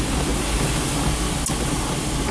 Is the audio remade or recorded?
recorded